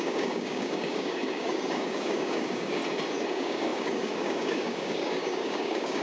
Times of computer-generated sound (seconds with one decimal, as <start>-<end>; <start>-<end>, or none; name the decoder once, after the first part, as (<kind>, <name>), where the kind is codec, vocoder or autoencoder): 0.0-2.8 (codec, DAC); 3.3-6.0